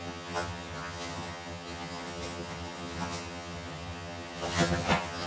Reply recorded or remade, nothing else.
remade